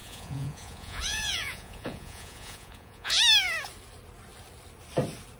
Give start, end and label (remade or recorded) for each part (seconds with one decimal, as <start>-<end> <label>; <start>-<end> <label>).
0.0-3.2 remade; 3.2-5.4 recorded